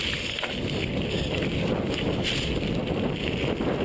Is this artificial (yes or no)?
no